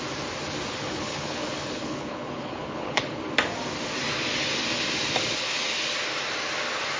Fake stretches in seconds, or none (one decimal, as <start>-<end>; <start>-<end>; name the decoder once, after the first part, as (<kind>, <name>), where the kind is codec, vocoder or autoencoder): 0.7-3.2 (codec, HILCodec)